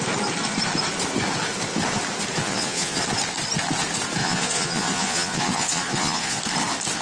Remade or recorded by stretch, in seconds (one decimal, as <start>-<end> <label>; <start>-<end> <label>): 0.0-2.4 recorded; 2.4-3.0 remade; 3.0-4.2 recorded; 4.2-6.4 remade; 6.4-7.0 recorded